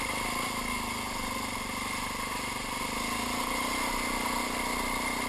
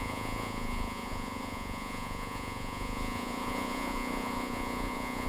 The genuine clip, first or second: first